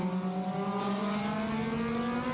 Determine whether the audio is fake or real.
real